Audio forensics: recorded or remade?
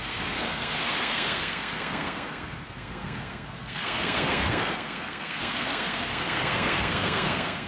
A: remade